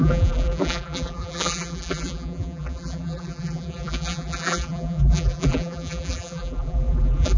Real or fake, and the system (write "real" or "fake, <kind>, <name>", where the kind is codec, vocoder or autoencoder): fake, vocoder, BigVGAN v2